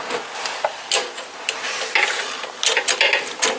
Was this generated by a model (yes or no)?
no